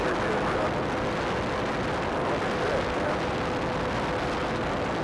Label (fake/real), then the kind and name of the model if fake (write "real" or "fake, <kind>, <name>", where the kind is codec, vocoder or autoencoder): real